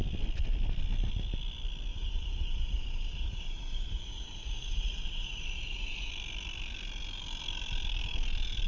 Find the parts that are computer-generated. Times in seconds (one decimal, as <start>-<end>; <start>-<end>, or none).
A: 1.9-6.1